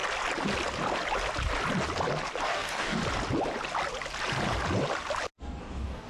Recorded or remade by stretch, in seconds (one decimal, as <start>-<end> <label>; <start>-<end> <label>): 0.0-2.4 recorded; 2.4-3.0 remade; 3.0-5.6 recorded; 5.6-6.1 remade